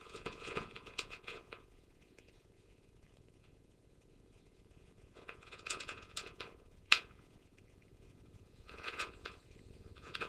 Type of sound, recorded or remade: remade